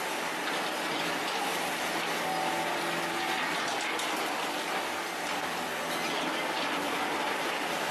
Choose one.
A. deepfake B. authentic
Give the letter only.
B